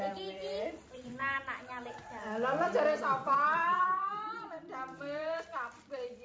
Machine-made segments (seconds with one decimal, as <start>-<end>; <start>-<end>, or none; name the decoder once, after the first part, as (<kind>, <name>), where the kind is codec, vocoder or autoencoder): 0.0-1.2 (vocoder, BigVGAN v2); 3.0-6.2